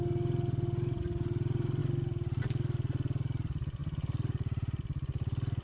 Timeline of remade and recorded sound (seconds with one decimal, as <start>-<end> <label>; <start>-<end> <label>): 0.0-5.6 recorded